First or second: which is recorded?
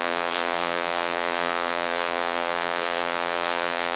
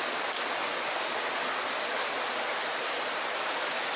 second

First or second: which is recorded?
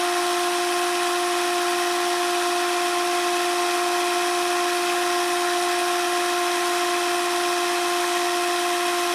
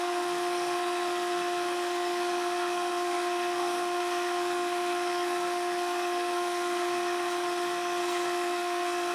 first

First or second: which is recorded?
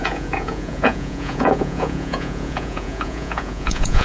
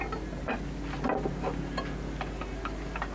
second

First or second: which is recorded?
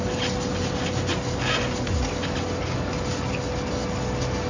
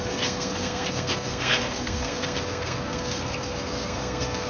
first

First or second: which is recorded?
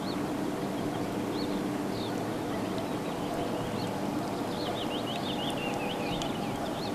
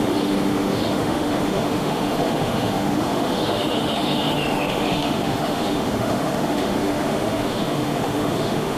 first